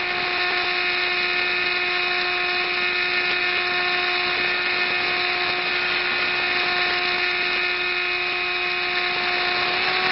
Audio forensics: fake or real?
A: real